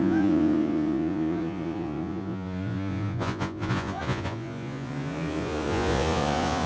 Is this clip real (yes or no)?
no